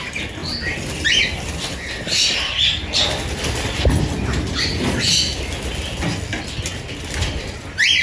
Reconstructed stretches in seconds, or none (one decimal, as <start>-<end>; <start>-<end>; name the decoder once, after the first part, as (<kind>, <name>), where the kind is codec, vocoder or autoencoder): none